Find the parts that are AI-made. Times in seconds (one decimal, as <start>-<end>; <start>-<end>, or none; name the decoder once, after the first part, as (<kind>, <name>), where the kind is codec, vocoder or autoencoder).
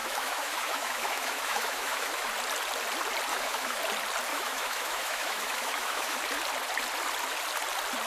0.0-2.3 (autoencoder, DAC-VAE); 3.3-3.8; 4.3-6.2